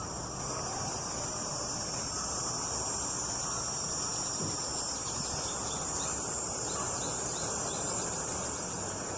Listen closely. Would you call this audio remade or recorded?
recorded